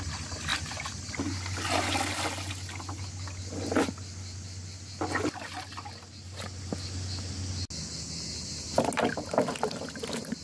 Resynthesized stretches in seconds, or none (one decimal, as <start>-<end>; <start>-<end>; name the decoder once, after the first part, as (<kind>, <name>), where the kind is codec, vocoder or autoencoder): none